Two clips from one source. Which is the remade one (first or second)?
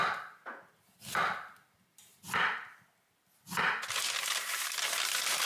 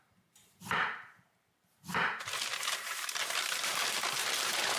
second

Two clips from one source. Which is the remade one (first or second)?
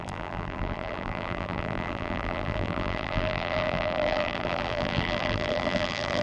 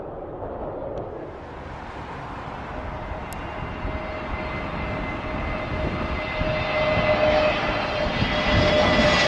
first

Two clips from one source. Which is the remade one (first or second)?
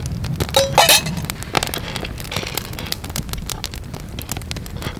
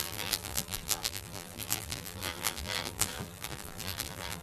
second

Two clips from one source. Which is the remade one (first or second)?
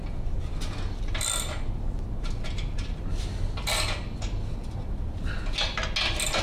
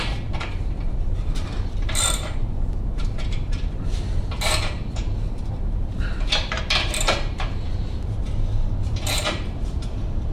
second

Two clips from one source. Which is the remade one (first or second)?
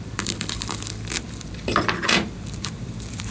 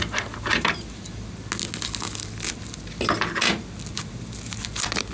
first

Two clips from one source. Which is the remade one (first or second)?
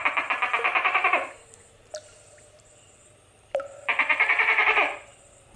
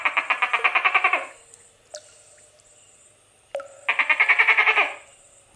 first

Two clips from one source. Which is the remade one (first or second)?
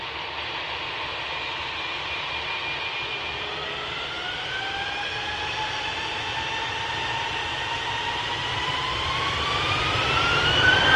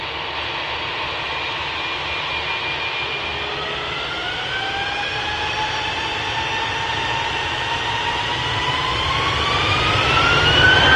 first